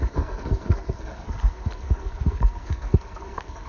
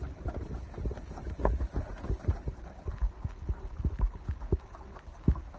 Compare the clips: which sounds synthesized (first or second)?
first